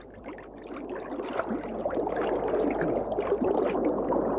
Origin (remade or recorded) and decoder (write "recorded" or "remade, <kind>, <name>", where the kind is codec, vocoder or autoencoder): recorded